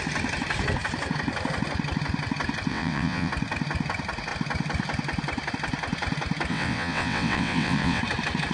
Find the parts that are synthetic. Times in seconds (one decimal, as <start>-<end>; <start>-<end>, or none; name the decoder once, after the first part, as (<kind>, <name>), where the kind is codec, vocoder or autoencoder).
2.7-3.3 (vocoder, WaveNeXt); 6.5-8.0